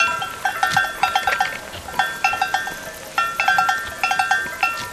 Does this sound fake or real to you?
real